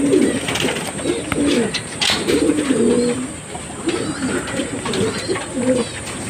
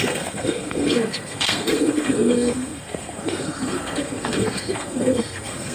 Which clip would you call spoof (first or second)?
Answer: second